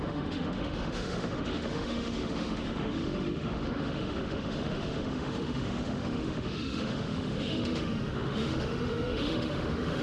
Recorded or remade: remade